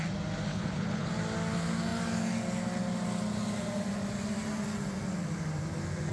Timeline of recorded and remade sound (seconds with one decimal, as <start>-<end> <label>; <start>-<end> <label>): 0.0-0.5 recorded; 0.5-1.1 remade; 1.1-6.1 recorded